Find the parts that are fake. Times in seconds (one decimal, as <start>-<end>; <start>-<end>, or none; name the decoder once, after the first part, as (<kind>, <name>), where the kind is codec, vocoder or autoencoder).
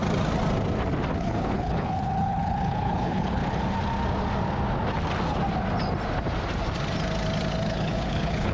1.2-3.4 (codec, HILCodec); 7.7-8.5